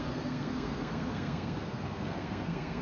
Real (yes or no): no